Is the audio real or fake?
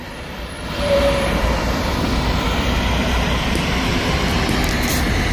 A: fake